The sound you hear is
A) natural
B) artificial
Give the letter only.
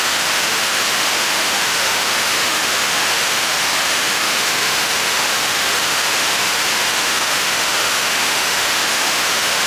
B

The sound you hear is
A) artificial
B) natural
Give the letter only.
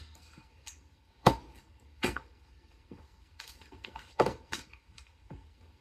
A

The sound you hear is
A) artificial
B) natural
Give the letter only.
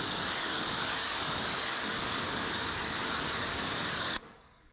A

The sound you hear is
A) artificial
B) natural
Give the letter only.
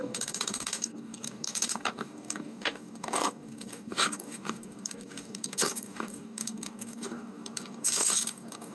A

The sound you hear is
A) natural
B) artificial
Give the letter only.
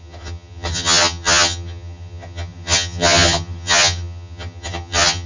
B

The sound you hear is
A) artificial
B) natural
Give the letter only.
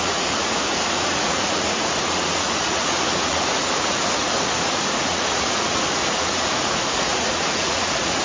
A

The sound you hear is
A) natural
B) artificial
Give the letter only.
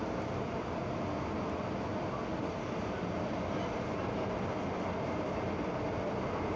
A